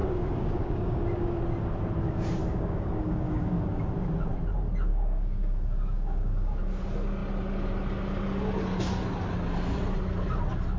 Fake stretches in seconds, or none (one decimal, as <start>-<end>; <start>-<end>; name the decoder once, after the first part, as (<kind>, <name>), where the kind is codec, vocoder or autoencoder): 0.0-1.4 (codec, DAC); 2.4-3.8; 4.9-6.6